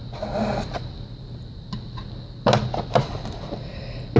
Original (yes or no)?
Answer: yes